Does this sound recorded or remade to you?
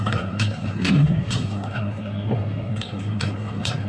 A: remade